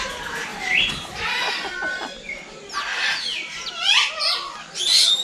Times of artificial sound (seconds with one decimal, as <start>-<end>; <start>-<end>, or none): 0.5-1.3; 2.9-3.7